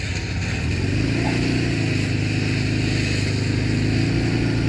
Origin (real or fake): real